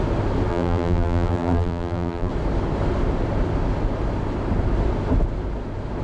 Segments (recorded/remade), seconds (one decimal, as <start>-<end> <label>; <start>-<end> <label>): 0.0-0.5 recorded; 0.5-2.3 remade; 2.3-6.0 recorded